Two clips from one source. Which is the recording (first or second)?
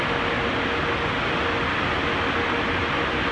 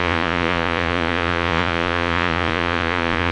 first